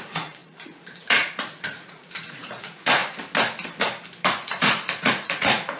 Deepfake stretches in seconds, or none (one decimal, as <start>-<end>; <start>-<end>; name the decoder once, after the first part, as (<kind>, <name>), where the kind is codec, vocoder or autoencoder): 0.0-3.0 (vocoder, Vocos); 4.2-5.8